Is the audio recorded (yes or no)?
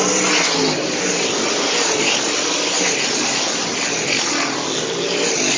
yes